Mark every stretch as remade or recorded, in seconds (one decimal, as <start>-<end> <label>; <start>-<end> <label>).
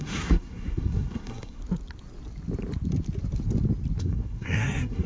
0.0-1.6 remade; 1.6-4.0 recorded; 4.0-5.1 remade